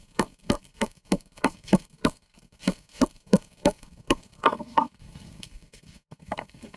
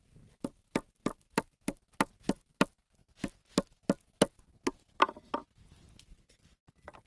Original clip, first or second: second